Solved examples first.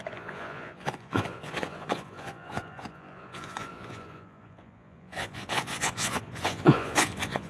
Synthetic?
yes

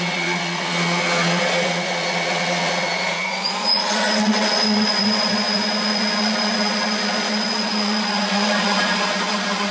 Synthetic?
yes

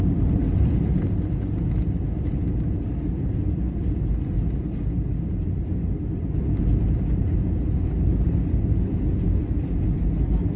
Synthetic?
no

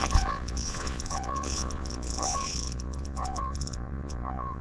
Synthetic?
yes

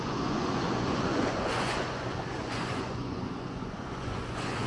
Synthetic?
yes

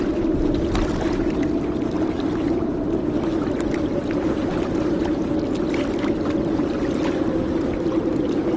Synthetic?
no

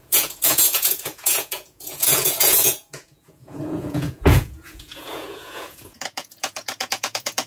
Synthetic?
yes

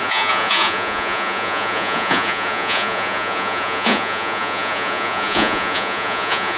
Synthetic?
yes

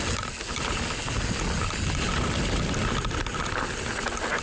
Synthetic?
no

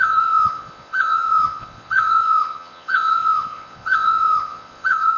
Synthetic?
yes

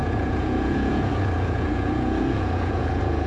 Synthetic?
yes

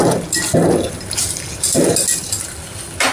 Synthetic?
no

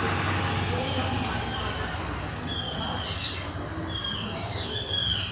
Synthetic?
no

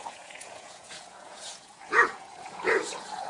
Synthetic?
yes